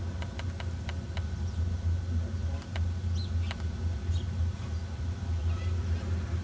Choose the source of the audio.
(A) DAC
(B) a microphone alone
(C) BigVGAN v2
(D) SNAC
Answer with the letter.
B